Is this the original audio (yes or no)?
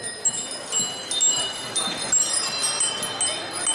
yes